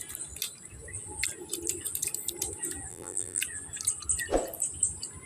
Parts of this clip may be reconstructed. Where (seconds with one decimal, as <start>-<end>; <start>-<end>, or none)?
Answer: 2.9-3.4